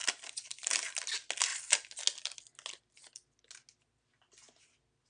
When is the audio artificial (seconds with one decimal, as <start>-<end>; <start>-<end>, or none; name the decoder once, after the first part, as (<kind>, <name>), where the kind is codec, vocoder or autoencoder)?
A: 0.0-1.1 (vocoder, BigVGAN v2)